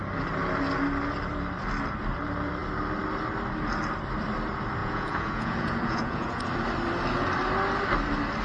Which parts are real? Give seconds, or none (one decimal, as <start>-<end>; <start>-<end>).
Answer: 0.0-4.8; 6.4-8.4

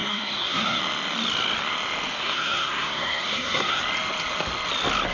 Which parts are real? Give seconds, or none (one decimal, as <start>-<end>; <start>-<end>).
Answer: 0.8-2.2; 3.8-5.1